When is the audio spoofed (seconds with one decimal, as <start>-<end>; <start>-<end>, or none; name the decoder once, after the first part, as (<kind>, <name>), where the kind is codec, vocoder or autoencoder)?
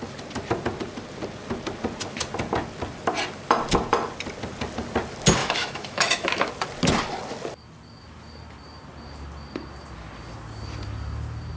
5.4-6.5 (autoencoder, DAC-VAE)